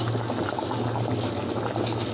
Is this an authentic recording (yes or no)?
yes